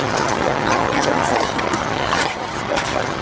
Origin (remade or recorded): remade